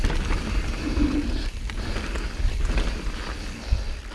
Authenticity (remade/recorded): recorded